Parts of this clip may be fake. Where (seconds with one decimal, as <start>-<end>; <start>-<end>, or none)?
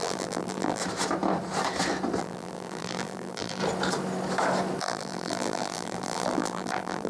0.0-0.8; 2.2-3.6; 4.8-7.1